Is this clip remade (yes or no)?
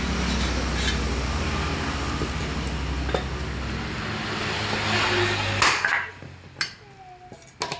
no